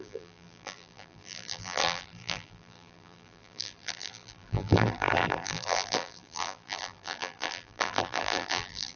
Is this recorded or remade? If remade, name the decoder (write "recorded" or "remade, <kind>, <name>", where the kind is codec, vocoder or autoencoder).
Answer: remade, vocoder, BigVGAN v2